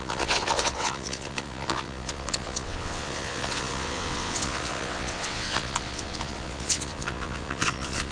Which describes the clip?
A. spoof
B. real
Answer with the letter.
A